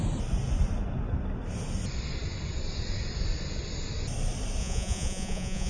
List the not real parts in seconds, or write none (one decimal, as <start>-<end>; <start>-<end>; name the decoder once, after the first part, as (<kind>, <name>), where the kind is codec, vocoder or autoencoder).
4.6-5.7 (vocoder, Vocos)